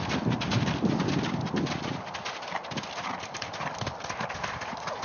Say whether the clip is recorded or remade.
recorded